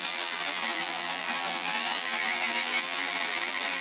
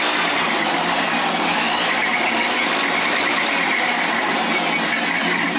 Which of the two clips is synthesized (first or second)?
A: first